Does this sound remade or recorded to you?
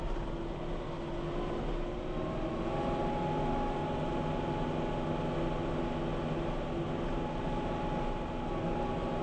recorded